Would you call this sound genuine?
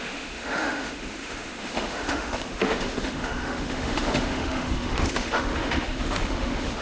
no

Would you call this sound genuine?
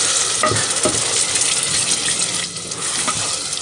yes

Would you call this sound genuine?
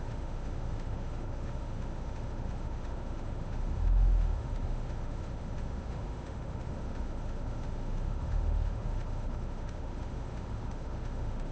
no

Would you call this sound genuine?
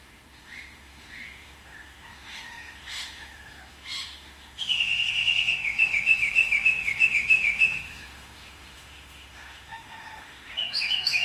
no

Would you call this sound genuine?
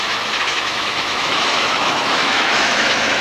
no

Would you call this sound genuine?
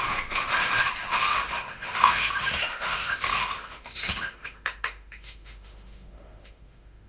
no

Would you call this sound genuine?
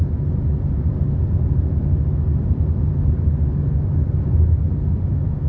yes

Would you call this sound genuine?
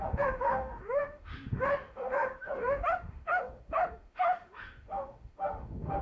no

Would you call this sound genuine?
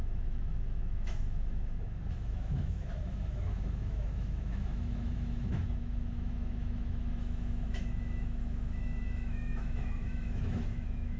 no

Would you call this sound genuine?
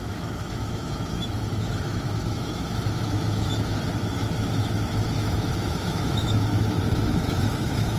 no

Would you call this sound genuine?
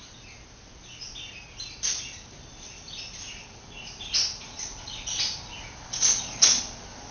yes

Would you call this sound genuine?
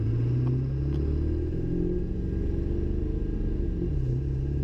yes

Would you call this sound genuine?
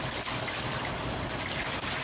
yes